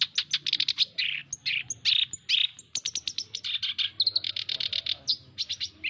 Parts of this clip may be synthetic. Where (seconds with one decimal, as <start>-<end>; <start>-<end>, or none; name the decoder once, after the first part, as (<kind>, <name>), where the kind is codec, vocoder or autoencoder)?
none